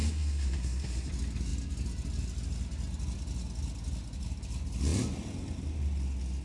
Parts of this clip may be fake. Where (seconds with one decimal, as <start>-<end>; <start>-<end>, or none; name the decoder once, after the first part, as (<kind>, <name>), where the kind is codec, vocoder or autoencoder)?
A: 0.0-1.1 (codec, SNAC)